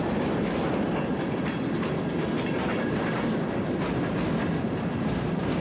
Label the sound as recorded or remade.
recorded